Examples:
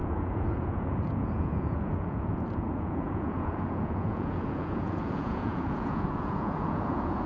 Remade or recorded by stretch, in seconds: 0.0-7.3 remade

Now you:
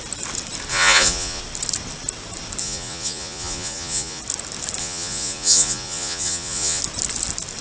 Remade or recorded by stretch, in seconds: 0.0-0.7 recorded; 0.7-1.4 remade; 1.4-2.6 recorded; 2.6-4.2 remade; 4.2-4.8 recorded; 4.8-6.8 remade; 6.8-7.6 recorded

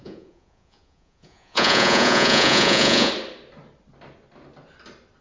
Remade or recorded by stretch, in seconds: 0.0-3.1 remade; 3.1-5.2 recorded

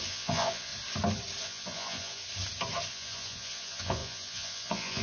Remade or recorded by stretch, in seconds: 0.0-0.7 remade; 0.7-1.4 recorded; 1.4-2.2 remade; 2.2-2.9 recorded; 2.9-5.0 remade